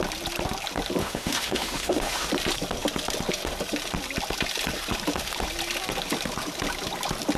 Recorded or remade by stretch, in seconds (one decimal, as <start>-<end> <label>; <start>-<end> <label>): 0.0-1.0 recorded; 1.0-2.3 remade; 2.3-7.4 recorded